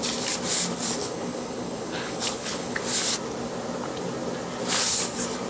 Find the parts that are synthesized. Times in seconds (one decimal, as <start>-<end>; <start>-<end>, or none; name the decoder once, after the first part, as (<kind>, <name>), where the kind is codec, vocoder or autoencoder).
1.0-2.8 (codec, HILCodec)